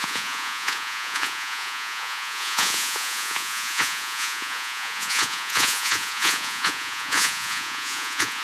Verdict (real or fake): fake